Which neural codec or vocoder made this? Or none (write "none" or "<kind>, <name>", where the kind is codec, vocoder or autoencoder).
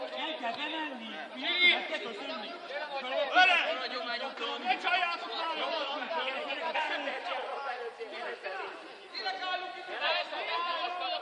none